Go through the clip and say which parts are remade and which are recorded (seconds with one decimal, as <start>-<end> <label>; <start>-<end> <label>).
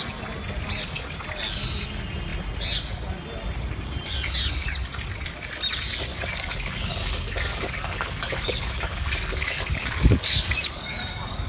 0.0-6.1 recorded; 6.1-11.5 remade